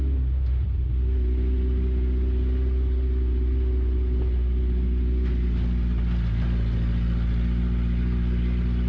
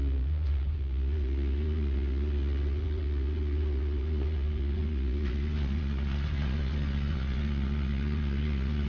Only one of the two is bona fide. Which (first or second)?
first